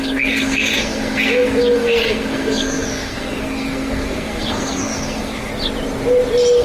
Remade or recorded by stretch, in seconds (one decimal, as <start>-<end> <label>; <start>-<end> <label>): 0.0-5.5 remade; 5.5-6.6 recorded